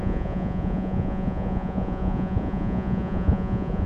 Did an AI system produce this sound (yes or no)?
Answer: yes